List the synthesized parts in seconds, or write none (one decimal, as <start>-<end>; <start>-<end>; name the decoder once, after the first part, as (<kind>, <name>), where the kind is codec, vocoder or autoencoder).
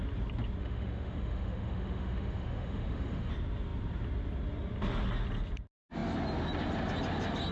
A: 0.6-3.3 (autoencoder, DAC-VAE)